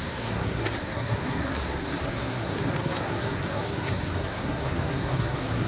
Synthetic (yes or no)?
yes